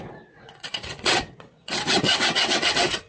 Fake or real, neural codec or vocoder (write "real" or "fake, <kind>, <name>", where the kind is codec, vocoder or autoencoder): fake, vocoder, WaveNeXt